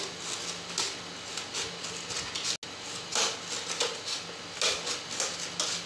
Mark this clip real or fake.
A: real